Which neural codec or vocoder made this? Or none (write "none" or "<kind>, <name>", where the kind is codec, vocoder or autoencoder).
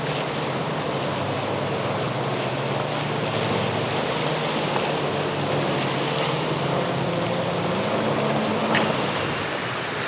none